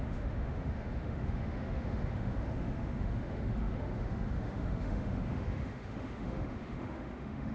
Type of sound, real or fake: fake